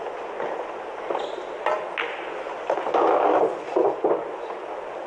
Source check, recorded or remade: recorded